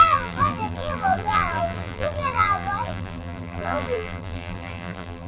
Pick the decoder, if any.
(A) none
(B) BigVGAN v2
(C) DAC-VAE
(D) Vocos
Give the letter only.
B